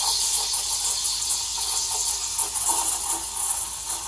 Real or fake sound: real